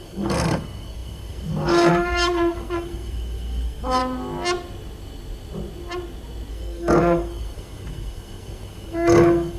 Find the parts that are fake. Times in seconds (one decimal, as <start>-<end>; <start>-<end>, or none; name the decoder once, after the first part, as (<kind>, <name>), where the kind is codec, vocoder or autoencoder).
0.0-4.0 (codec, SNAC); 6.5-9.6